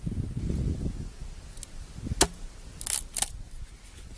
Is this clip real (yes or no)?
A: yes